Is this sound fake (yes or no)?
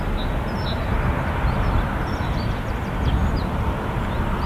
no